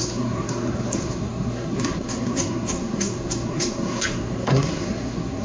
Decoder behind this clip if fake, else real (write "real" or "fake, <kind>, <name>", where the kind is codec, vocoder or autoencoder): fake, codec, SNAC